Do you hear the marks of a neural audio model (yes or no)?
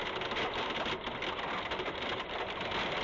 no